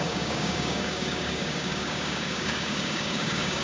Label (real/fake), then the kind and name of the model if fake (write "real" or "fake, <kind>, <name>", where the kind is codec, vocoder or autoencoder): fake, codec, DAC